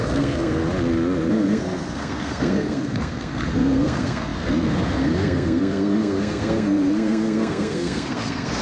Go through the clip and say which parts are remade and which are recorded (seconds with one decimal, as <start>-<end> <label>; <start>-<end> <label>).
0.0-0.6 remade; 0.6-1.3 recorded; 1.3-8.6 remade